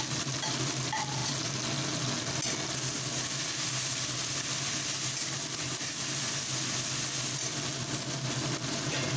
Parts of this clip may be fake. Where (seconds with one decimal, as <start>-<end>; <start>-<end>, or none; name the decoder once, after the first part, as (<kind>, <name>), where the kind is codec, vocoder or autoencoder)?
none